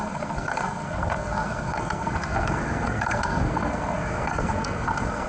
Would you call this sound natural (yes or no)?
no